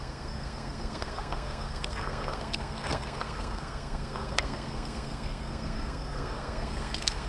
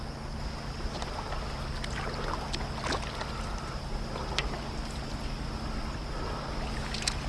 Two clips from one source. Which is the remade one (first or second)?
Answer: first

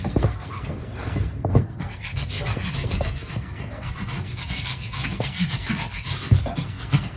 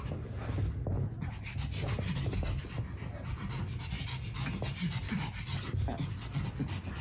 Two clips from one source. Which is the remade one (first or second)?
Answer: first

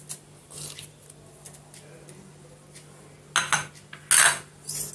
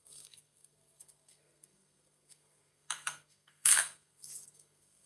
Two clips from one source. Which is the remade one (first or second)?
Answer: second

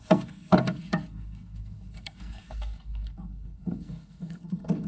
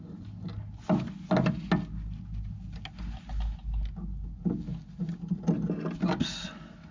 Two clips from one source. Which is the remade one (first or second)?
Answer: first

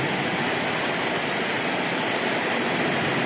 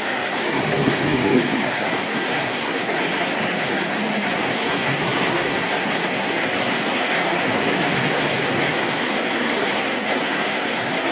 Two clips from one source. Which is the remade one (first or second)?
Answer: second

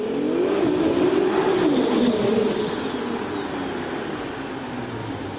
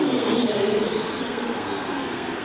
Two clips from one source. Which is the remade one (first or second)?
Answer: second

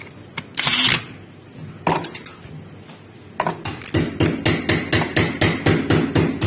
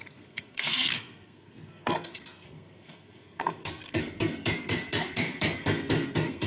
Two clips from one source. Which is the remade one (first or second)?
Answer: second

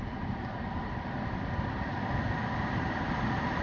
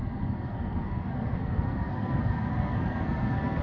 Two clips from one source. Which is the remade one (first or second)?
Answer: second